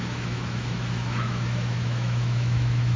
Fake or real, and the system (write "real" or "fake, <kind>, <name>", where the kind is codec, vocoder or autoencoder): fake, autoencoder, DAC-VAE